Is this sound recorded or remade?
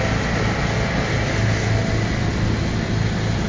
recorded